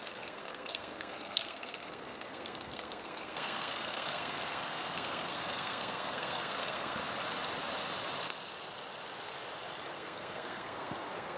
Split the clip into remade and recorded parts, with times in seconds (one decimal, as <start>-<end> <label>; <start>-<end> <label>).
0.0-7.0 remade; 7.0-9.9 recorded; 9.9-11.4 remade